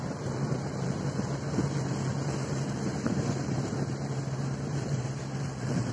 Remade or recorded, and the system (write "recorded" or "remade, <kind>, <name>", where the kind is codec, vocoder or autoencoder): remade, vocoder, BigVGAN v2